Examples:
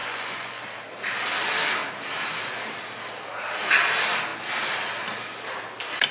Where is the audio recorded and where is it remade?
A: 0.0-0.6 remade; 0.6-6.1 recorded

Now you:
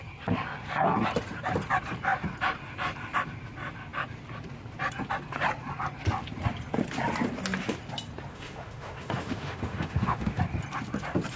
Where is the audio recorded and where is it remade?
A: 0.0-8.3 recorded; 8.3-10.4 remade; 10.4-11.4 recorded

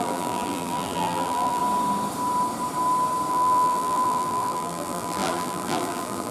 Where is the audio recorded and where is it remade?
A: 0.0-1.6 remade; 1.6-3.3 recorded; 3.3-6.3 remade

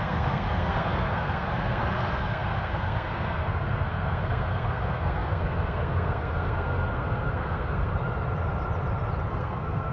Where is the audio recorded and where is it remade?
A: 0.0-7.9 remade; 7.9-9.3 recorded; 9.3-9.9 remade

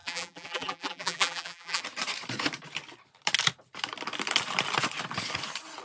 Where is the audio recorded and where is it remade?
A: 0.0-1.8 remade; 1.8-5.8 recorded